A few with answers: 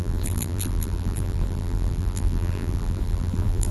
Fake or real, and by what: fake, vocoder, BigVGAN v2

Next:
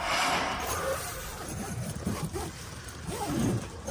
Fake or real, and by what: fake, vocoder, BigVGAN v2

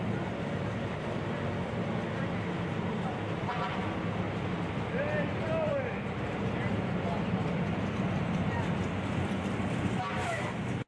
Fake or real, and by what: real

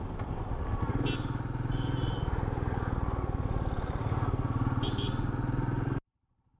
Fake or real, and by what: real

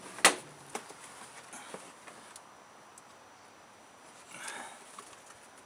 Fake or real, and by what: real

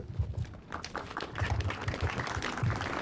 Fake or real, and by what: real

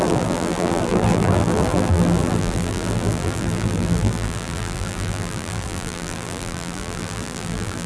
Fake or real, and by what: fake, vocoder, BigVGAN v2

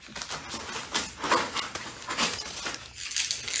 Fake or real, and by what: real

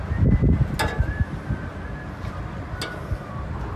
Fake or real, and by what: real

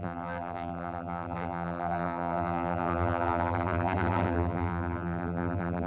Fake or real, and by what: fake, vocoder, BigVGAN v2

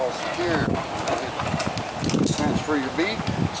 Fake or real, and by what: real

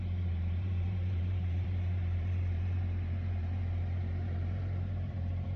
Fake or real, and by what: fake, vocoder, BigVGAN v2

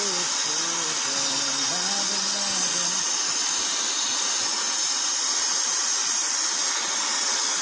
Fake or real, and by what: real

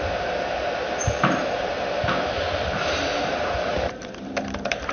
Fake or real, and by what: fake, vocoder, BigVGAN v2